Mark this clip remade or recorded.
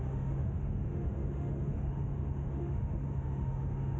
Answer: remade